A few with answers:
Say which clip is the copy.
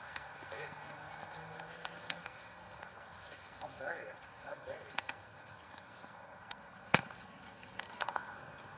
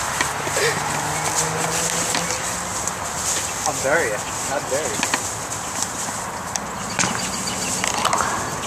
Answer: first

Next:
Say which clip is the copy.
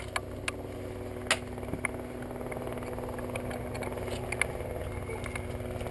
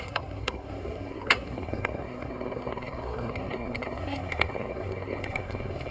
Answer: second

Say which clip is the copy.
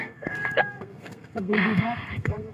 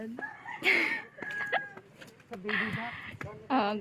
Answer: first